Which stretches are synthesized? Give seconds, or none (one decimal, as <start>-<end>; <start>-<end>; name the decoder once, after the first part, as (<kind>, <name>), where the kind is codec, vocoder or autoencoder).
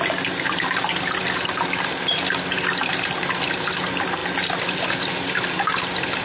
none